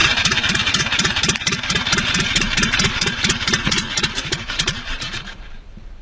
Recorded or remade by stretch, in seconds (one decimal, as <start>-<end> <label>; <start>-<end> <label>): 0.0-6.0 remade